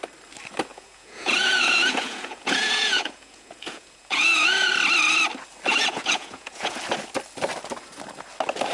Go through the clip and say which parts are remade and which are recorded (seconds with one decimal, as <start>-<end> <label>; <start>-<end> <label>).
0.0-0.7 recorded; 0.7-4.7 remade; 4.7-5.7 recorded; 5.7-6.8 remade; 6.8-8.7 recorded

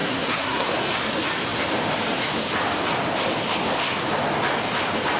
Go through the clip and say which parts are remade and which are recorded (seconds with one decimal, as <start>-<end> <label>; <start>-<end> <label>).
0.0-0.7 remade; 0.7-5.2 recorded

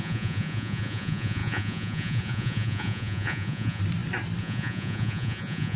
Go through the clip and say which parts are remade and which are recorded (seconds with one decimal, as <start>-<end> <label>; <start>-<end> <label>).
0.0-3.8 remade; 3.8-4.4 recorded; 4.4-5.8 remade

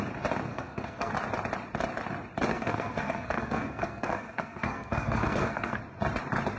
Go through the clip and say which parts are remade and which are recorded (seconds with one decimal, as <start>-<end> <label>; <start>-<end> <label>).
0.0-0.5 recorded; 0.5-1.1 remade; 1.1-2.5 recorded; 2.5-5.8 remade; 5.8-6.6 recorded

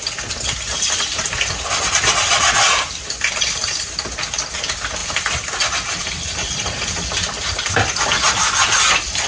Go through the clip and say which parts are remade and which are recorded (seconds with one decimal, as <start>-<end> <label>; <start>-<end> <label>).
0.0-9.3 recorded